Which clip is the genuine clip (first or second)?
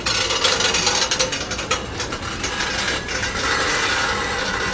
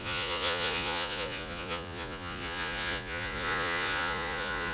first